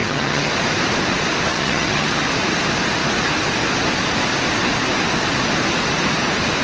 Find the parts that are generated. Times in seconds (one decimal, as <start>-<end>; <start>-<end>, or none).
0.0-0.5; 1.5-2.2